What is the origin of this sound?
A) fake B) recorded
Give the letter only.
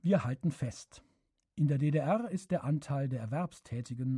B